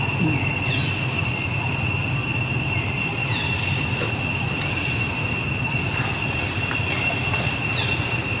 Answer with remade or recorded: recorded